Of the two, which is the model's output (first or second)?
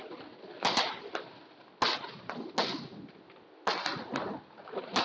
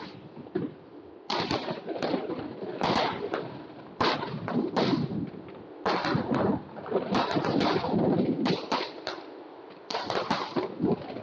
second